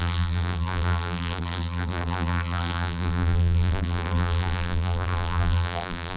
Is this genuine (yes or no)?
no